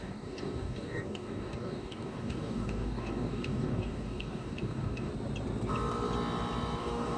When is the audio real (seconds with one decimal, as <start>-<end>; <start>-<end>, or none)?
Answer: 5.1-6.8